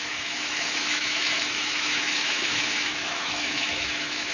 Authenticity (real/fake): fake